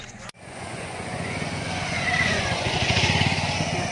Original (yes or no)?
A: no